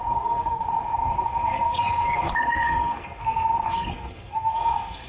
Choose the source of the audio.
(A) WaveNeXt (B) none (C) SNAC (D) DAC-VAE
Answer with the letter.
C